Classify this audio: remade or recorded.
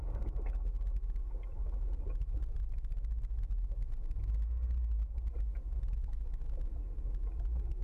recorded